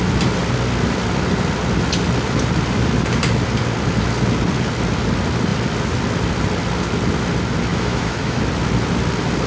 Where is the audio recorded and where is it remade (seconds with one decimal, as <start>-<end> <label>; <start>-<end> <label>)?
0.0-7.7 recorded; 7.7-8.4 remade; 8.4-9.5 recorded